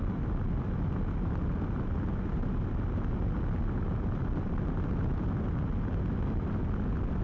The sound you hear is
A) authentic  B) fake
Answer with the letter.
A